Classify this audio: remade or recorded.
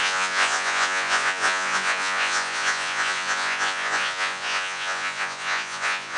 remade